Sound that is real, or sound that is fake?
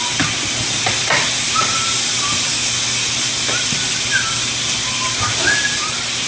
real